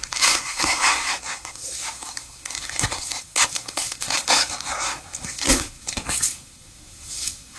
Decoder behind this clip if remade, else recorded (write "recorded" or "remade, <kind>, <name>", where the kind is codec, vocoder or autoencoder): remade, codec, SNAC